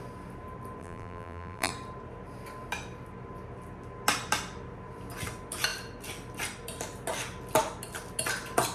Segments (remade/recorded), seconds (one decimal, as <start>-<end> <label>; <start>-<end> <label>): 0.0-0.8 recorded; 0.8-1.7 remade; 1.7-8.7 recorded